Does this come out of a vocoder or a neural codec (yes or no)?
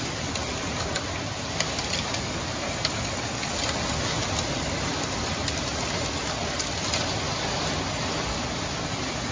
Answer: no